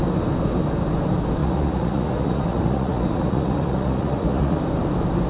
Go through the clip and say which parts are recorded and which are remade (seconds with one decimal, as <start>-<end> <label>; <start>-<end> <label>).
0.0-1.4 recorded; 1.4-4.6 remade; 4.6-5.3 recorded